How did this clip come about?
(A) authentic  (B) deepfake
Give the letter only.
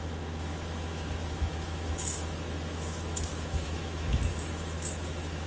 B